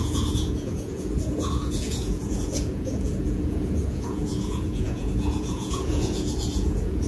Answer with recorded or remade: remade